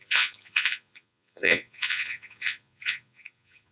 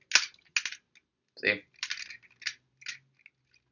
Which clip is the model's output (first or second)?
first